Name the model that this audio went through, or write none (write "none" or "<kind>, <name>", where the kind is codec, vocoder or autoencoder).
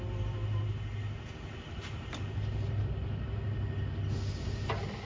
none